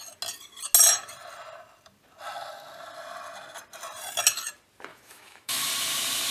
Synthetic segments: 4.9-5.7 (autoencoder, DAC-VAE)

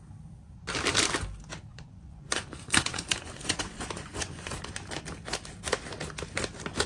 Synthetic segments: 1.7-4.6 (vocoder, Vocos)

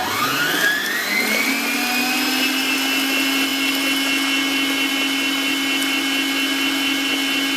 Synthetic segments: none